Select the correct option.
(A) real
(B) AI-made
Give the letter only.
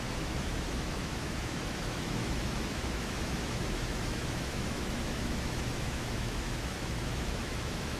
B